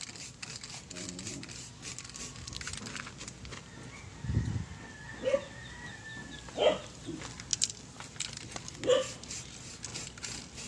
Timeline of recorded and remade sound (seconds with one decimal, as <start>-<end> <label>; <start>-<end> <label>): 0.0-10.7 recorded